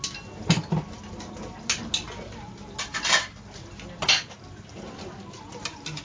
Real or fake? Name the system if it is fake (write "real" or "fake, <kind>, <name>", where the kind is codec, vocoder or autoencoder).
real